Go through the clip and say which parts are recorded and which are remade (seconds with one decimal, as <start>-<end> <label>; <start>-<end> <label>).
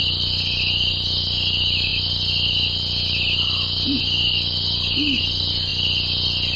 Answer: 0.0-5.7 remade; 5.7-6.6 recorded